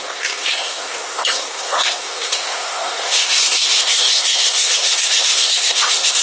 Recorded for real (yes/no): no